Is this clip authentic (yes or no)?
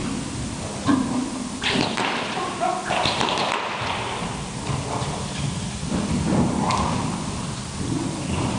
yes